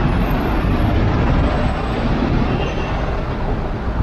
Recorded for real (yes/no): yes